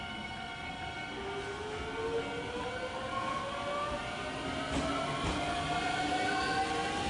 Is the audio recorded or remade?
recorded